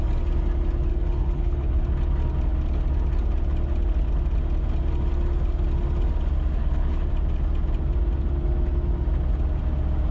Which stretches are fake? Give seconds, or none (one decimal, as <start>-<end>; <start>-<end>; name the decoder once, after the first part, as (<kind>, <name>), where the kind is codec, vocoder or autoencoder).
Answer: 0.9-1.8 (codec, HILCodec); 6.6-7.1